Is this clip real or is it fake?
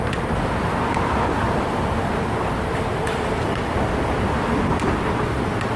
fake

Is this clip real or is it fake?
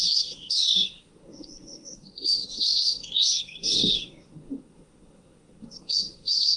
fake